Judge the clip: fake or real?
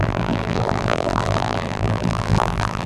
fake